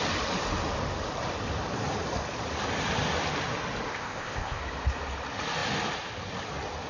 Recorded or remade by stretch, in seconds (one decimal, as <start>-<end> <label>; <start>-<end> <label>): 0.0-3.9 recorded; 3.9-4.6 remade; 4.6-6.9 recorded